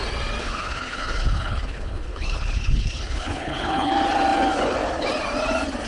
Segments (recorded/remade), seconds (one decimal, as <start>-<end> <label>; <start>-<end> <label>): 0.0-0.4 recorded; 0.4-3.9 remade; 3.9-5.9 recorded